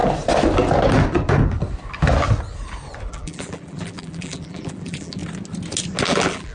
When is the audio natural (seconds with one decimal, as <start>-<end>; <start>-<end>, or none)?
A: 0.0-3.1; 5.2-6.0